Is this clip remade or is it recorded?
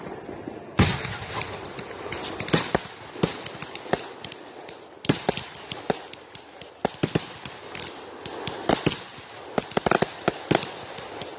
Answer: recorded